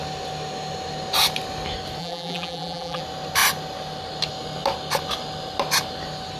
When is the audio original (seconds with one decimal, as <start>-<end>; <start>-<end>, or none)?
0.0-2.0; 3.0-6.4